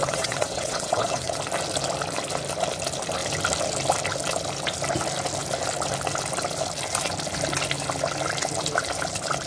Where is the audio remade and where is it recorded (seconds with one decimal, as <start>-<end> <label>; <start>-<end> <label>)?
0.0-1.4 remade; 1.4-9.5 recorded